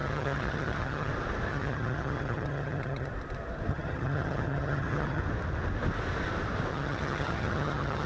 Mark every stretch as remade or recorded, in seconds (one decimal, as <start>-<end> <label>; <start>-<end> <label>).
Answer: 0.0-1.1 remade; 1.1-1.5 recorded; 1.5-3.1 remade; 3.1-3.7 recorded; 3.7-5.2 remade; 5.2-6.7 recorded; 6.7-8.1 remade